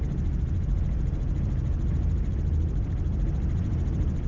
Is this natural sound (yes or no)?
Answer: no